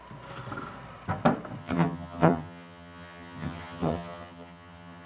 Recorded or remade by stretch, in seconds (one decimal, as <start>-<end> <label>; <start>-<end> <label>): 0.0-1.6 recorded; 1.6-5.1 remade